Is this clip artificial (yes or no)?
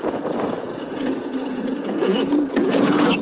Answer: yes